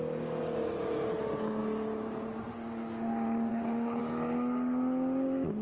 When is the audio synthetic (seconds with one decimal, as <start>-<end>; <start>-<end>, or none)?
3.5-4.0